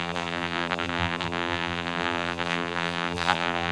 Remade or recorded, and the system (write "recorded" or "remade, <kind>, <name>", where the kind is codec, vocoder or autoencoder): remade, vocoder, BigVGAN v2